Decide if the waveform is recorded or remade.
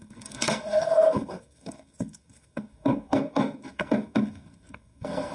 remade